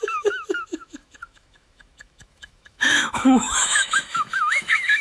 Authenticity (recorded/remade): remade